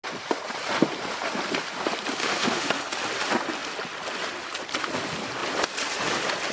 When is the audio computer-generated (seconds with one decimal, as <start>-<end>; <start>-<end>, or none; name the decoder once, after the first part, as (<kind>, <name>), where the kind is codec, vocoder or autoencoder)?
2.2-2.7 (autoencoder, DAC-VAE)